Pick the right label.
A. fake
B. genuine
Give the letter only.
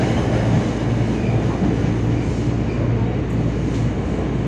B